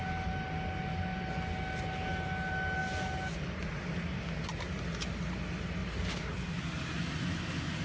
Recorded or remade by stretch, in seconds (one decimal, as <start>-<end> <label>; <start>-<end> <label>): 0.0-7.8 recorded